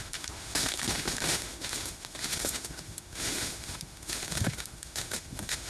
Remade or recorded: remade